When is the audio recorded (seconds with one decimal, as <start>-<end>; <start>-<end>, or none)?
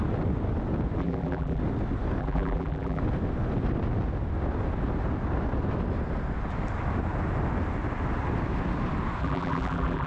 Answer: 0.0-1.0; 1.6-2.2; 3.0-9.2